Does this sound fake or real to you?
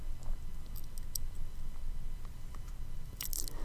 real